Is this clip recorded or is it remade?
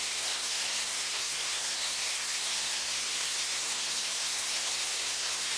remade